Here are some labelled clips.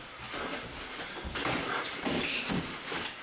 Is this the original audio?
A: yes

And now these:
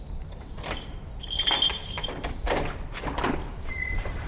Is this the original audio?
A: no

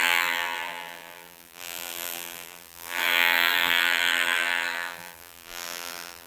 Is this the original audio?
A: no